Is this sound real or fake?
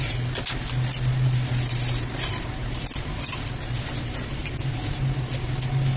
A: real